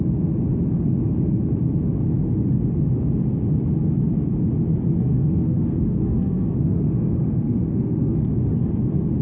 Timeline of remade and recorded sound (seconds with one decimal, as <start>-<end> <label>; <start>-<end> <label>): 0.0-5.0 recorded; 5.0-8.1 remade; 8.1-9.2 recorded